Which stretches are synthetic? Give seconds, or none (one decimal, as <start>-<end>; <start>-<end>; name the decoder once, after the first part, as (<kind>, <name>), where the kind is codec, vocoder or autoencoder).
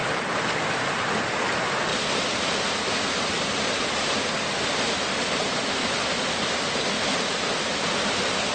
none